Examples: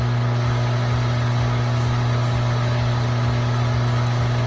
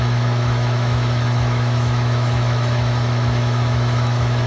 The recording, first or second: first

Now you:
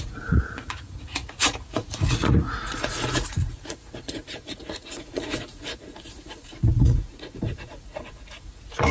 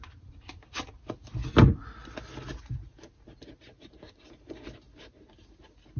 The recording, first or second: second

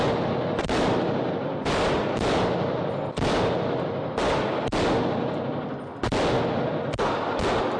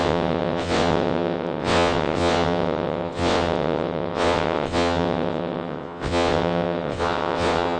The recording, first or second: first